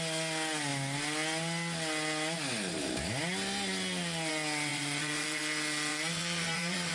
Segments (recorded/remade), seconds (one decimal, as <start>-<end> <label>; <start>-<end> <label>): 0.0-4.7 recorded; 4.7-5.4 remade; 5.4-5.9 recorded; 5.9-6.9 remade